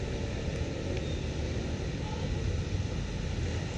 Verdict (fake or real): real